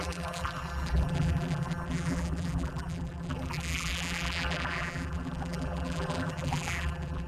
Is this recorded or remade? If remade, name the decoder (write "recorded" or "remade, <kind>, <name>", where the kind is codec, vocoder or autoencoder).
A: remade, vocoder, BigVGAN v2